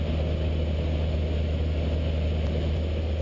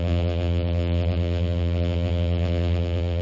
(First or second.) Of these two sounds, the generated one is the second